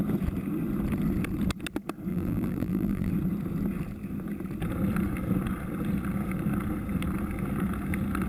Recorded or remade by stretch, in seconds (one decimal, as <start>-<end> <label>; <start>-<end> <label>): 0.0-2.1 recorded; 2.1-3.1 remade; 3.1-8.3 recorded